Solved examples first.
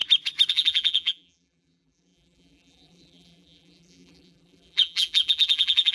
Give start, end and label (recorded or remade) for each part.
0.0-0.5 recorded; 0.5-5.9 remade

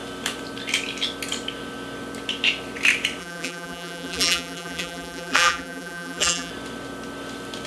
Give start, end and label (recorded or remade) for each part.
0.0-3.2 recorded; 3.2-6.5 remade; 6.5-7.7 recorded

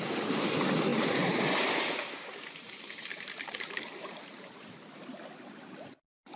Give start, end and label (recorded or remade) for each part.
0.0-0.9 recorded; 0.9-4.7 remade; 4.7-6.4 recorded

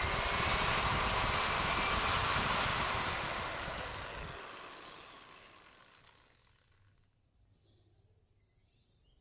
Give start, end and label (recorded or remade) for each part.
0.0-9.2 recorded

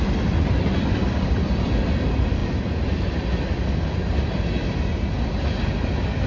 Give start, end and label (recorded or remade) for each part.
0.0-6.3 recorded

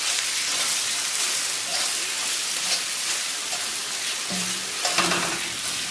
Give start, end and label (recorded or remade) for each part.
0.0-5.9 remade

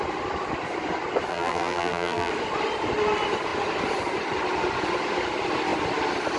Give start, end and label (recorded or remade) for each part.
0.0-1.3 recorded; 1.3-2.3 remade; 2.3-6.4 recorded